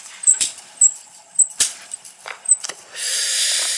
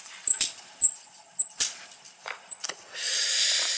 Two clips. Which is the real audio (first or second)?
second